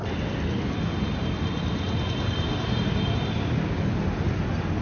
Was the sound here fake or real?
real